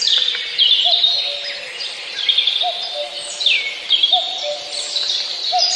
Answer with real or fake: real